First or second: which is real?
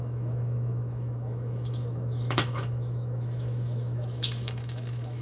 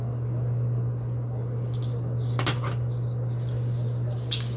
second